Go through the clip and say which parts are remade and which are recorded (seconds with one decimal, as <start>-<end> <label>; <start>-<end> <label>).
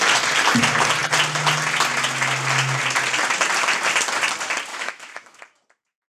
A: 0.0-4.7 recorded; 4.7-5.4 remade; 5.4-6.1 recorded